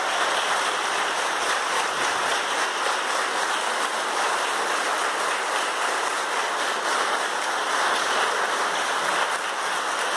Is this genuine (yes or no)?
yes